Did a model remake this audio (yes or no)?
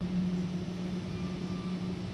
no